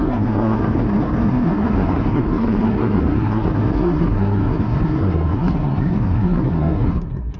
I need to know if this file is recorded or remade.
remade